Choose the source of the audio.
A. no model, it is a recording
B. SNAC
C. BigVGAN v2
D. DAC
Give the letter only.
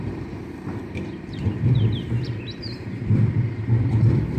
C